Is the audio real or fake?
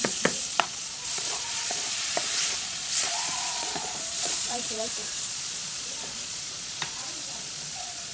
fake